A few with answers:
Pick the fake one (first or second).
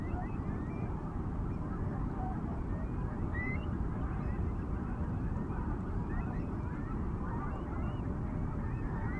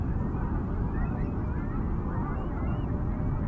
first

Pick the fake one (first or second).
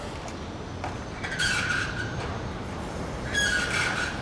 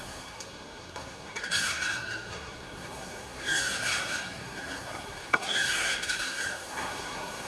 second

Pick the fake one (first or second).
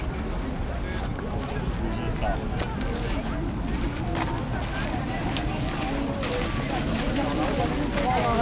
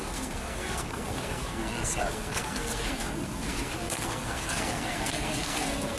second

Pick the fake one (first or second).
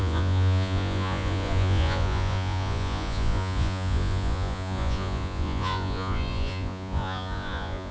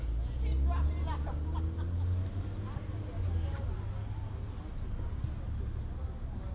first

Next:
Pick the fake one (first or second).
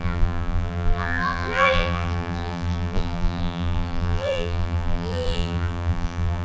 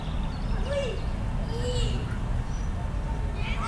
first